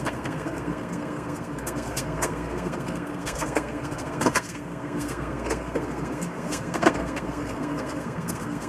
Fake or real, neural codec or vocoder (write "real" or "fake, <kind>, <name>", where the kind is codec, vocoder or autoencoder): fake, codec, SNAC